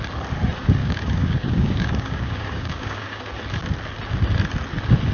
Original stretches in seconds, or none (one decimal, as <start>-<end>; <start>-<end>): 0.0-0.8; 3.2-5.1